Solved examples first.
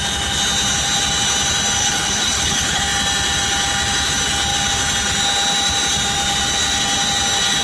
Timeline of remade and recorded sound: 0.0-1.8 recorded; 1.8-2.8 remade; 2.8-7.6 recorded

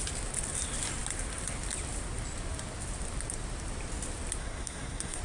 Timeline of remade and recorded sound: 0.0-4.4 recorded; 4.4-5.2 remade